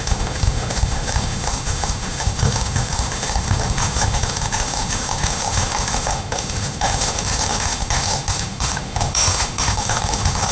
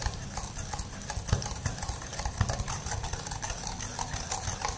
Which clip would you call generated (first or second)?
first